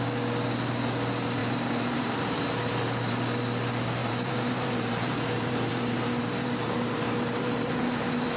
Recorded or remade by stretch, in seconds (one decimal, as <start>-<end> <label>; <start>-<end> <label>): 0.0-1.4 recorded; 1.4-3.1 remade; 3.1-4.0 recorded; 4.0-8.4 remade